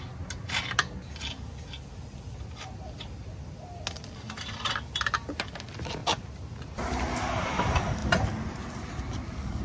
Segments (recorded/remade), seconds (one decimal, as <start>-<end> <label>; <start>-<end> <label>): 0.0-9.6 recorded